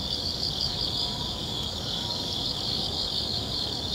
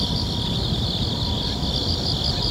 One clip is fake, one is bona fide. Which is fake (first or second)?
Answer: first